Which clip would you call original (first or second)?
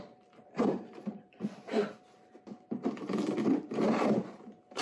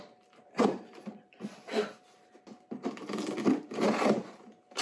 second